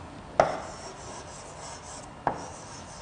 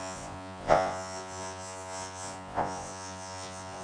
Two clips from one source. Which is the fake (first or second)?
second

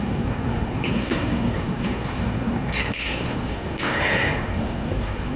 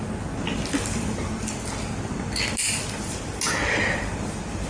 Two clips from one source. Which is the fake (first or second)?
first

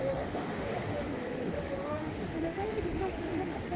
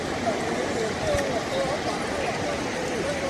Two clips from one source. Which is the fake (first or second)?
first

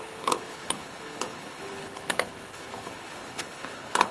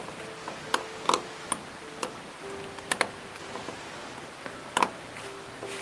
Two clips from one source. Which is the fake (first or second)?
first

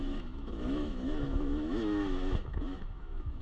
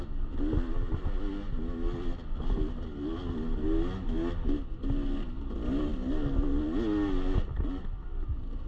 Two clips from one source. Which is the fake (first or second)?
first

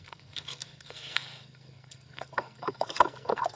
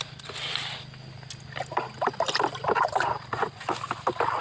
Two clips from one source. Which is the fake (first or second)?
first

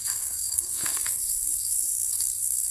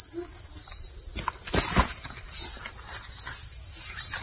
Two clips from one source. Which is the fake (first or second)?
first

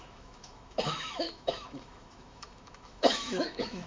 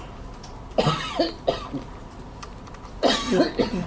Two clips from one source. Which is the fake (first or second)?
first